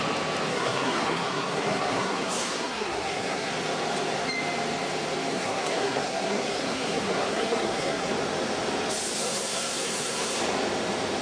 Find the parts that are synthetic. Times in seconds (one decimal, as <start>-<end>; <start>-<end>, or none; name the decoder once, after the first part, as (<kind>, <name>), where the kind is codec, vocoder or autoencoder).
0.5-3.5 (codec, SNAC); 5.3-8.1; 9.2-10.4